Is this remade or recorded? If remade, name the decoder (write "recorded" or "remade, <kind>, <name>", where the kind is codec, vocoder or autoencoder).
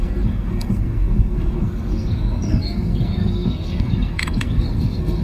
remade, codec, SNAC